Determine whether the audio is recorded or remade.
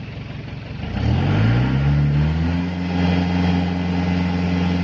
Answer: recorded